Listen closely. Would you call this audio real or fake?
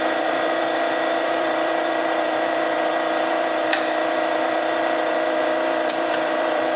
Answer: fake